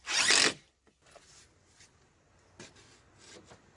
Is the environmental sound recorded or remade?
recorded